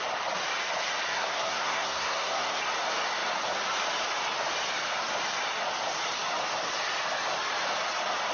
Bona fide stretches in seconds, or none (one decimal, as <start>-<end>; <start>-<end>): 0.0-1.1; 2.6-8.3